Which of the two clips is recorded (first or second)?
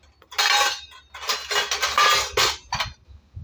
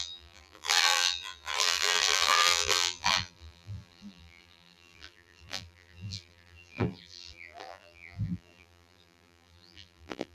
first